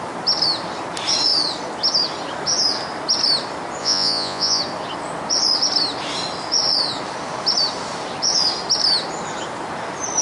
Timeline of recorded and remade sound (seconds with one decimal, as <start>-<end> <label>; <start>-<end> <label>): 0.0-3.8 recorded; 3.8-4.6 remade; 4.6-10.2 recorded